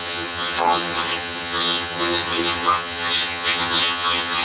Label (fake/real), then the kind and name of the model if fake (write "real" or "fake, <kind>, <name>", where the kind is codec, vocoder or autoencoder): fake, vocoder, HiFi-GAN